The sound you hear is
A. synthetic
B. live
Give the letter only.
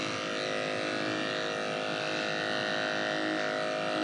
B